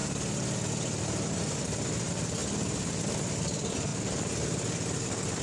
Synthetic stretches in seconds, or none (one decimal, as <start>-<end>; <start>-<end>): 0.0-3.9